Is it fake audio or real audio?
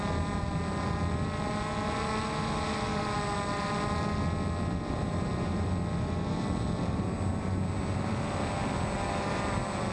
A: real